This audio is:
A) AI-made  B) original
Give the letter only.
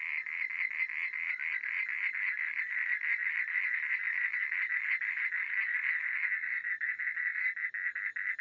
B